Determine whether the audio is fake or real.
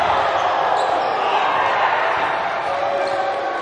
real